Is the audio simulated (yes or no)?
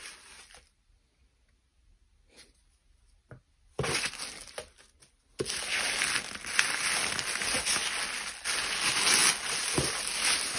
no